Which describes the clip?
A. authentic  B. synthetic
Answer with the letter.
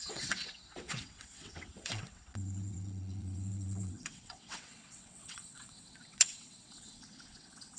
B